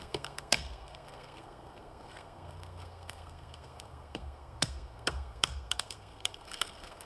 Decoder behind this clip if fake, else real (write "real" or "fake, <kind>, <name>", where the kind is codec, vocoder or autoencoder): fake, codec, SNAC